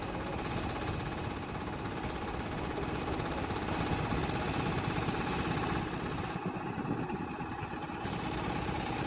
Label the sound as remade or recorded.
recorded